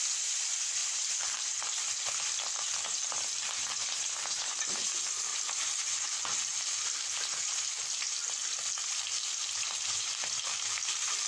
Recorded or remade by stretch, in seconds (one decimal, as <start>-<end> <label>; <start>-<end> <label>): 0.0-0.8 recorded; 0.8-4.6 remade; 4.6-11.3 recorded